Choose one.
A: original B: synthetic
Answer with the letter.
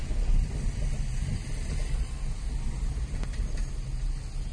A